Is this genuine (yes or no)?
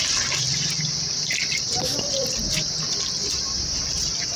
yes